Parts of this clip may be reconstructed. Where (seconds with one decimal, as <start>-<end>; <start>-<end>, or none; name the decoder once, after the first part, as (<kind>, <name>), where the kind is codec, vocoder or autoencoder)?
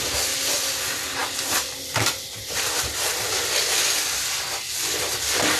none